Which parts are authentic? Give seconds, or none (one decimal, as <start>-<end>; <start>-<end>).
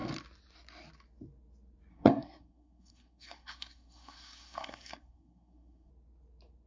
0.0-1.9; 5.9-6.7